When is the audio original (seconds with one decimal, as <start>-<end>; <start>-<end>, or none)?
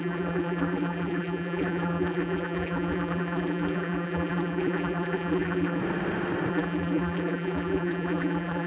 5.8-6.5